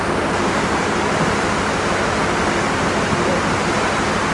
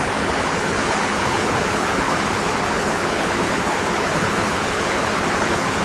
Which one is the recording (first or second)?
first